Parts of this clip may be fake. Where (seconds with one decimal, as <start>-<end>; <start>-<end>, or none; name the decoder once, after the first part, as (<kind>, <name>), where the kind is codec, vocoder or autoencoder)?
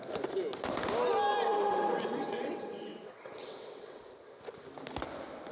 1.5-4.0 (vocoder, WaveNeXt)